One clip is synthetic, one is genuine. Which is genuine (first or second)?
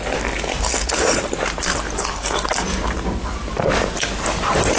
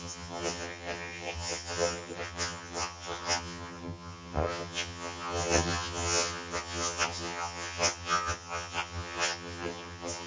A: first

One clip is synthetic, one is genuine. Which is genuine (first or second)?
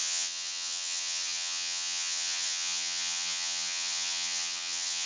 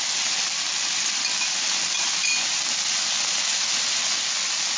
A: second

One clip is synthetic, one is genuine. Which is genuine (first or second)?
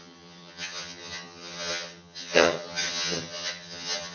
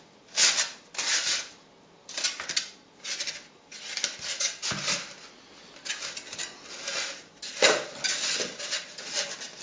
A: second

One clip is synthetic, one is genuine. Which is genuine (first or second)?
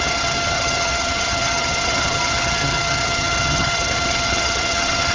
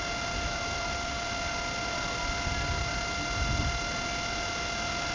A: second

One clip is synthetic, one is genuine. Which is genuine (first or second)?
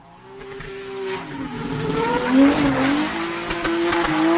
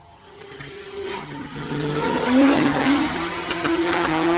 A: first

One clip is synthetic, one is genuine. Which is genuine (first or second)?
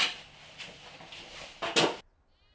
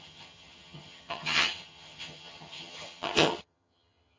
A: first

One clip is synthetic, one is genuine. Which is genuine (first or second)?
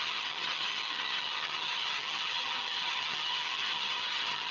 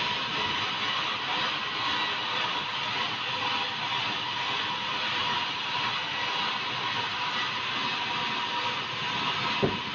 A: second